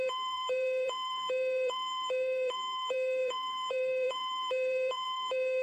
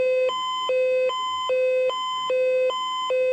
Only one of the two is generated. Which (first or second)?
first